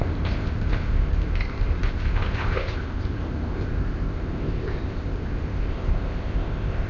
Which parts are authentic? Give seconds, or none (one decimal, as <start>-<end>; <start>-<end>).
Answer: none